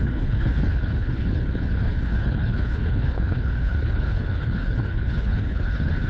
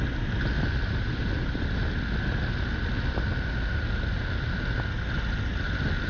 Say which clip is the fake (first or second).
first